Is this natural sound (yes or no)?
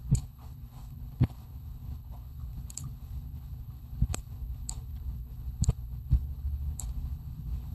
no